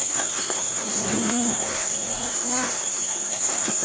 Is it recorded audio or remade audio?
remade